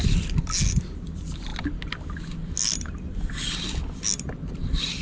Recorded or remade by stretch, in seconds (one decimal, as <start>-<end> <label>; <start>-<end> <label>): 0.0-5.0 recorded

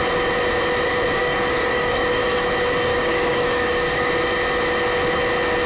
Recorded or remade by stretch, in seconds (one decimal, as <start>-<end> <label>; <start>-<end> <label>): 0.0-1.2 recorded; 1.2-2.5 remade; 2.5-2.9 recorded; 2.9-4.1 remade; 4.1-5.7 recorded